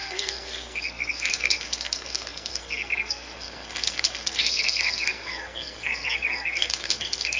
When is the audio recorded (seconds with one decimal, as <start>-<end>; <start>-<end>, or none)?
none